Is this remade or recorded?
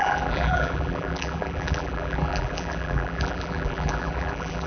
remade